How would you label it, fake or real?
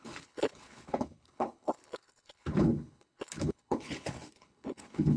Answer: fake